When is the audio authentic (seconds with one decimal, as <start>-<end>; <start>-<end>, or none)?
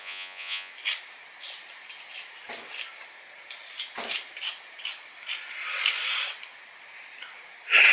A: 0.7-7.9